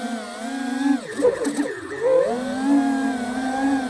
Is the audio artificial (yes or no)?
no